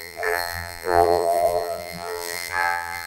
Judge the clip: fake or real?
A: fake